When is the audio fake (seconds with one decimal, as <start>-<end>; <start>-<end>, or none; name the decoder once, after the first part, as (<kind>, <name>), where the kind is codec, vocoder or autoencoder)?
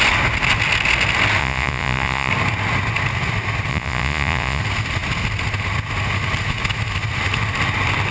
1.4-2.3 (vocoder, Vocos); 3.7-4.6